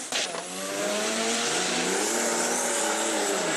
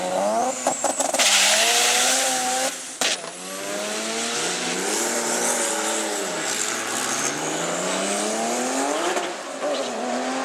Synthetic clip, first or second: first